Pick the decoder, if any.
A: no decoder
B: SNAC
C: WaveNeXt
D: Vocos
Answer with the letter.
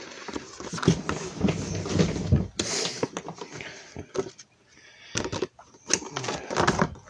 A